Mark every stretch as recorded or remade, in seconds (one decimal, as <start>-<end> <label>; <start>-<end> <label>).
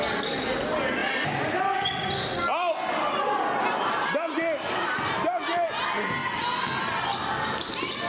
0.0-1.0 recorded; 1.0-3.2 remade; 3.2-8.1 recorded